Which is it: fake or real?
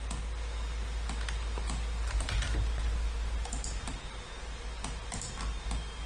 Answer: real